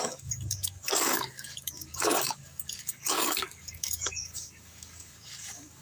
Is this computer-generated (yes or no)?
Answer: yes